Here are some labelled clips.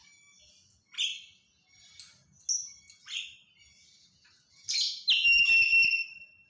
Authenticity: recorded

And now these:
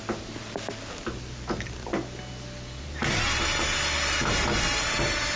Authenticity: recorded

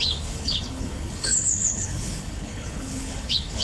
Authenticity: remade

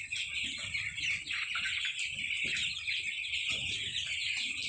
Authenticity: recorded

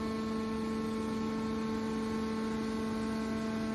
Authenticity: recorded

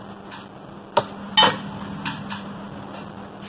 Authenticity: recorded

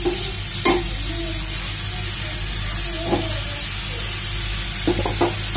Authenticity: recorded